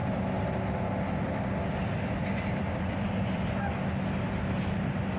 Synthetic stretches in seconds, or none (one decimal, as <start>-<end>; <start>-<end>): none